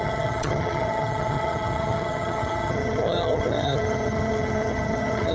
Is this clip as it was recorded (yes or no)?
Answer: no